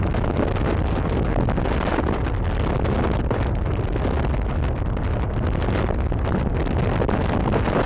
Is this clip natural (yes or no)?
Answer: yes